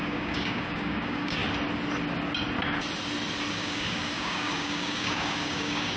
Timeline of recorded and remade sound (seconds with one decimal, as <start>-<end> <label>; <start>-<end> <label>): 0.0-1.4 remade; 1.4-3.5 recorded; 3.5-6.0 remade